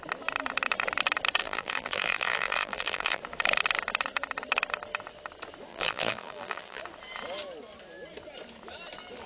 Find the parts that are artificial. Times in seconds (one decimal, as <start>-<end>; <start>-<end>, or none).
1.4-3.2; 5.7-6.8